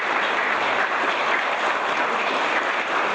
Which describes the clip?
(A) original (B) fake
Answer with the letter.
A